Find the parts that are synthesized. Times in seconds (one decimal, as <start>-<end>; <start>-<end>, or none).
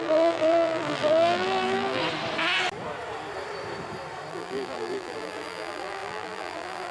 0.0-2.0; 4.3-6.9